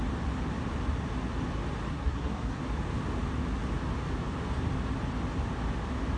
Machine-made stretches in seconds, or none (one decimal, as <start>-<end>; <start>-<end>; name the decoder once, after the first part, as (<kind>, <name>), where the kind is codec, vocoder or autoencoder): 1.9-2.6 (codec, SNAC)